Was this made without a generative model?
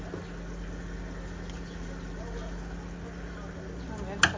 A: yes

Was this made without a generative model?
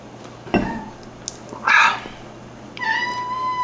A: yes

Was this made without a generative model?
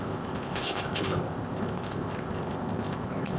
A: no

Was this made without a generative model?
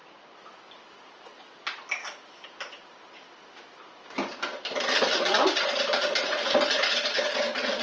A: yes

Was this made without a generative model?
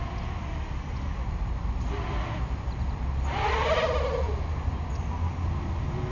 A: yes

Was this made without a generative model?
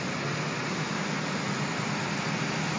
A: yes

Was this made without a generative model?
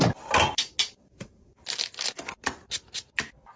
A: yes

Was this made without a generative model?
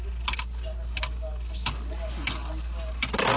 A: yes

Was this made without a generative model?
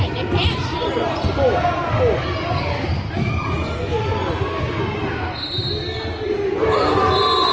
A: yes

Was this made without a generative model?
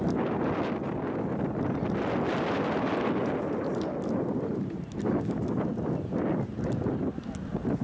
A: yes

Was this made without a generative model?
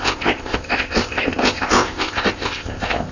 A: no